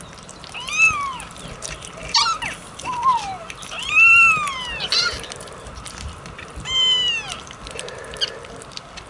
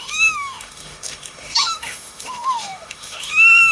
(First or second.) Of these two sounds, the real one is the first